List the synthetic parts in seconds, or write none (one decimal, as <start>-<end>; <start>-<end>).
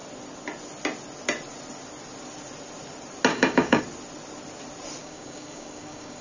3.3-3.8; 5.0-6.2